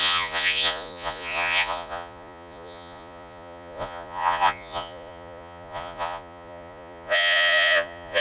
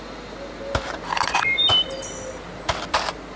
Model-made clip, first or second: first